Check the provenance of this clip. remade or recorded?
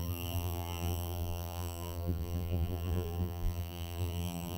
remade